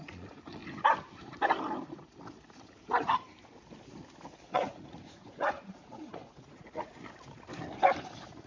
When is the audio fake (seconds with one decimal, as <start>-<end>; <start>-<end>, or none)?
0.0-0.6; 4.5-7.0; 8.0-8.5